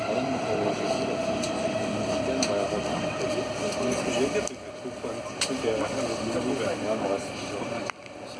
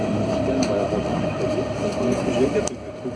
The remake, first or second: second